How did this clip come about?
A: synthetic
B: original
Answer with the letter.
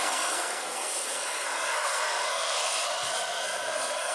A